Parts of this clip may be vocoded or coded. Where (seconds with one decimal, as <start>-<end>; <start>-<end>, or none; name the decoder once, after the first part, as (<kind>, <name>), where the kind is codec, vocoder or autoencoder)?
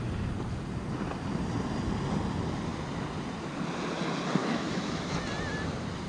4.4-5.2 (autoencoder, DAC-VAE)